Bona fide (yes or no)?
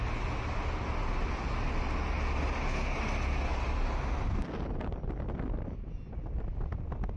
yes